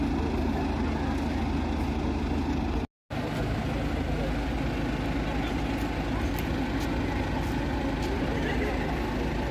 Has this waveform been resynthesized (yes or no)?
no